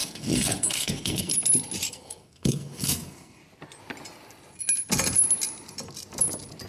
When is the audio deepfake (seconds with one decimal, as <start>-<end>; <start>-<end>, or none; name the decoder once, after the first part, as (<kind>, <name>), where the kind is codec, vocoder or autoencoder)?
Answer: 0.0-1.3 (codec, SNAC); 1.9-3.4